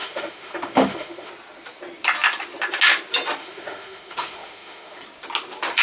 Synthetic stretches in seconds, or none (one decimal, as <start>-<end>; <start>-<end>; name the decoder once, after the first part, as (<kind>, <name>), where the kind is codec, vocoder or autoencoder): 0.0-1.3 (autoencoder, DAC-VAE); 3.4-5.0